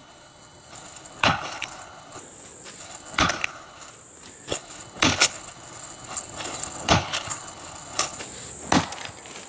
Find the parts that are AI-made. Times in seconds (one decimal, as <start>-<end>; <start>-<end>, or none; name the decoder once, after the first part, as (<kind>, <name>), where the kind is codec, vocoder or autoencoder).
0.0-2.2 (codec, HILCodec); 2.8-3.9; 4.5-8.2

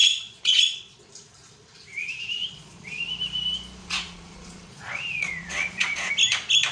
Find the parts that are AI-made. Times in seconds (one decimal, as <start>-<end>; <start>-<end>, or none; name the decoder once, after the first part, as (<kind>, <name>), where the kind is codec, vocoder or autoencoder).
0.0-1.1 (vocoder, Vocos); 2.0-3.0; 3.8-6.1

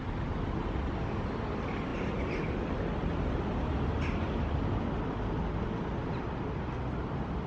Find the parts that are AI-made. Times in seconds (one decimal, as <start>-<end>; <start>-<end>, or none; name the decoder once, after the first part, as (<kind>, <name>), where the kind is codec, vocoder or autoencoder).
none

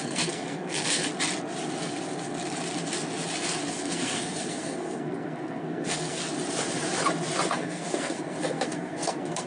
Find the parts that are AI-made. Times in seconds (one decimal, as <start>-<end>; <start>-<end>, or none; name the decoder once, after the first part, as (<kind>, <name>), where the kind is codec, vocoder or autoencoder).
0.0-1.1 (codec, SNAC); 3.7-6.2; 7.5-9.5

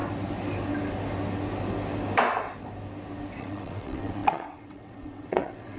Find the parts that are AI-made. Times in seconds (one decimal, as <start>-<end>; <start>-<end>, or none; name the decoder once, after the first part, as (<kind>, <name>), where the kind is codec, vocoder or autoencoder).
3.4-5.8 (vocoder, WaveNeXt)

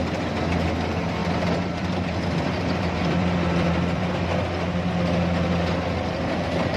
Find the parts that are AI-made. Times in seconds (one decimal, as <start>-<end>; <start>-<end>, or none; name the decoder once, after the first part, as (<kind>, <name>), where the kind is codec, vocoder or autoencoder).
1.2-4.1 (vocoder, BigVGAN v2)

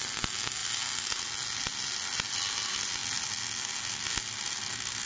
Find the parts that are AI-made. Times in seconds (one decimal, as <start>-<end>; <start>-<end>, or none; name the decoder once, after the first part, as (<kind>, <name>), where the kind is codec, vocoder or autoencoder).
none